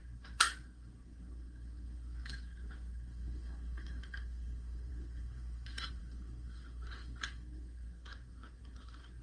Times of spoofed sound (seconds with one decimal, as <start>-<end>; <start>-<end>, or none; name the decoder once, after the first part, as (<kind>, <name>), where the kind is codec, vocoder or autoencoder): 0.0-9.2 (codec, SNAC)